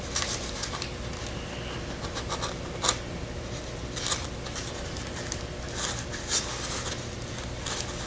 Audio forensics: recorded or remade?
recorded